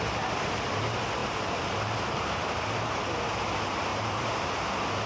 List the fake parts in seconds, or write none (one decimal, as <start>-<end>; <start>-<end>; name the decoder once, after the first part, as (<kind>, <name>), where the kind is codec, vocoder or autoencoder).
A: 1.2-3.0 (vocoder, BigVGAN v2); 3.9-4.5